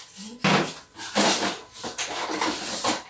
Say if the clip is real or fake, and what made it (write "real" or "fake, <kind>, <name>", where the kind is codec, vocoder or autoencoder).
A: real